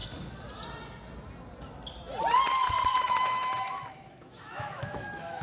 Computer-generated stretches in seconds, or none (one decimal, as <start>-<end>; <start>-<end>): 3.0-5.4